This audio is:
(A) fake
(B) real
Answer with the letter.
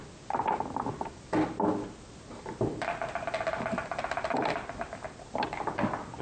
B